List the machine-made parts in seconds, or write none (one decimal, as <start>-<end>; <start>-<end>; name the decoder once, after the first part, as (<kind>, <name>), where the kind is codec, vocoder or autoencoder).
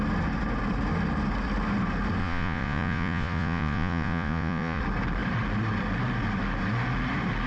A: 2.2-4.8 (vocoder, Vocos)